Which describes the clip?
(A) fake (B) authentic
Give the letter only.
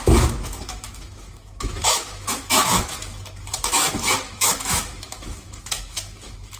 A